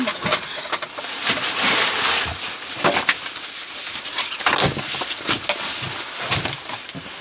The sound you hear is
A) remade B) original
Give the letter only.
B